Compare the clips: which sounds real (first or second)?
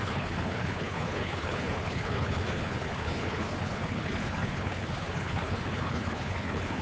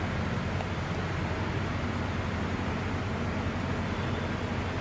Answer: second